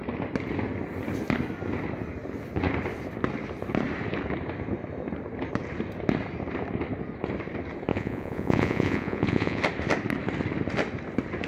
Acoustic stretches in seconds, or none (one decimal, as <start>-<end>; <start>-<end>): 0.0-7.9; 9.6-11.5